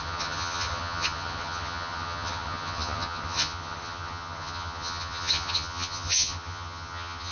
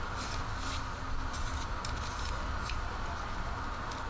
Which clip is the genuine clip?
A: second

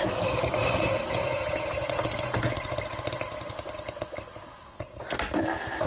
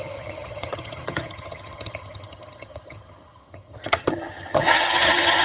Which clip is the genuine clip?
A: first